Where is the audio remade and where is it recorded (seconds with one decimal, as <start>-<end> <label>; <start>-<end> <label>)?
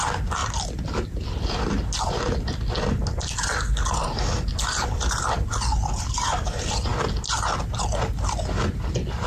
0.0-9.3 recorded